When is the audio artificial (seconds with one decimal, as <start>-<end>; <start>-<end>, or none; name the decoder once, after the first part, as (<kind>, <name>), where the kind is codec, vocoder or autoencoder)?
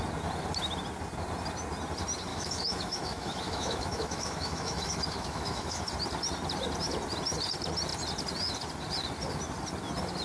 2.3-5.8 (autoencoder, DAC-VAE)